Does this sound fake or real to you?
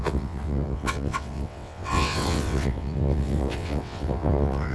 fake